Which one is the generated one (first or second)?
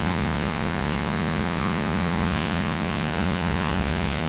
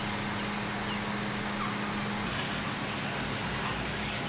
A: first